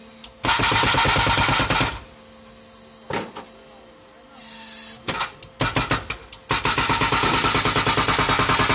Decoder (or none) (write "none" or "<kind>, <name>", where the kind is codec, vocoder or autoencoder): none